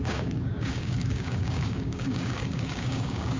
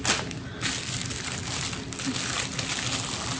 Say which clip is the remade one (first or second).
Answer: first